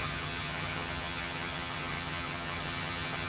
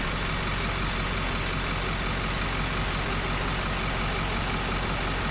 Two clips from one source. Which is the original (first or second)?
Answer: second